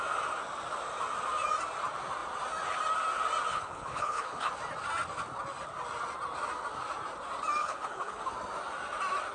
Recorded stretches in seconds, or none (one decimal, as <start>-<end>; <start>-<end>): 0.0-3.5; 4.5-7.6; 8.2-9.3